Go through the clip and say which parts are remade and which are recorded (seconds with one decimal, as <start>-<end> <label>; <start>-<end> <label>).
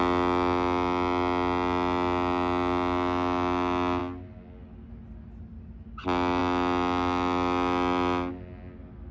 0.0-9.1 recorded